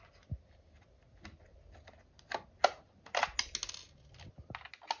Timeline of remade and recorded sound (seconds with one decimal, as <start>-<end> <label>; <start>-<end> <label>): 0.0-5.0 recorded